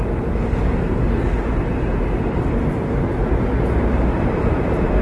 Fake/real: real